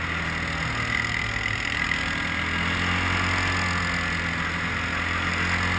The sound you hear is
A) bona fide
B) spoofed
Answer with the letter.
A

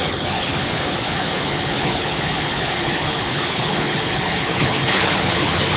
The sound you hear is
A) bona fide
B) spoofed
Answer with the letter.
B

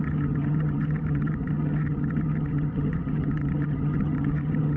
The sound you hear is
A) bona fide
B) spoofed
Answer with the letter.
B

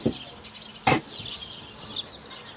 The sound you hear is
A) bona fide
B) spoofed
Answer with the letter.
A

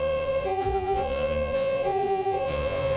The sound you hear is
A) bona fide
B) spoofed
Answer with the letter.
B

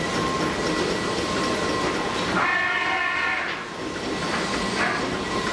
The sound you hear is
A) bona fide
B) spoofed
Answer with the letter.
A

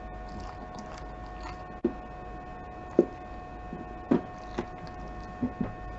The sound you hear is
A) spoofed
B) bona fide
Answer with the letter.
B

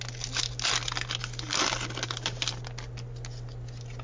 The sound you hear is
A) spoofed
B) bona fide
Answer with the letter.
B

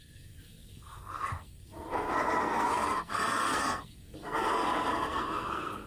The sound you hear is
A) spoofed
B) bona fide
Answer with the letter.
A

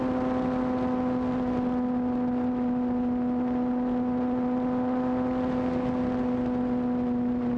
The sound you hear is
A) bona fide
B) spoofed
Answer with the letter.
A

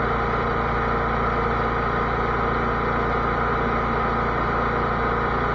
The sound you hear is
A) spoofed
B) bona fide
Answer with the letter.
B